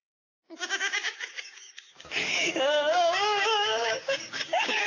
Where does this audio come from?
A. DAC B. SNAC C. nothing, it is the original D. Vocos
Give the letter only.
A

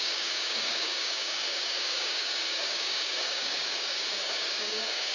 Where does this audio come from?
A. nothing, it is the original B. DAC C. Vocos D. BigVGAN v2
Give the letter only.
B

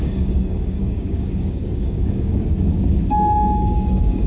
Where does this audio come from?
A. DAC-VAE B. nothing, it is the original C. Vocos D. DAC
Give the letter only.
D